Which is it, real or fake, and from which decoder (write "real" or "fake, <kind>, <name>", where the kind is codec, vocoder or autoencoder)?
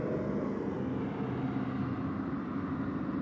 real